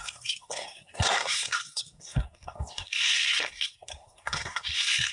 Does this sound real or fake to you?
fake